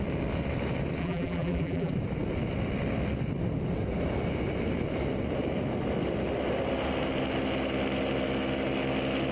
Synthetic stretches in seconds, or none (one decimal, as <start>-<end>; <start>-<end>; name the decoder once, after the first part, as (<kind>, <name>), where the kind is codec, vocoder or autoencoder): 1.0-1.9 (vocoder, BigVGAN v2)